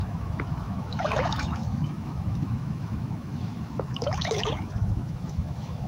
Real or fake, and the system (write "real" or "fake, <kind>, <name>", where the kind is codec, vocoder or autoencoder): fake, autoencoder, DAC-VAE